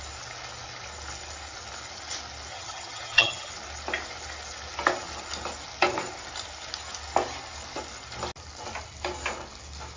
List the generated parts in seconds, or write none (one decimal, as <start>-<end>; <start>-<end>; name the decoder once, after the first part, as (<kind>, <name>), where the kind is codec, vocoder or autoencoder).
2.5-3.5 (vocoder, HiFi-GAN)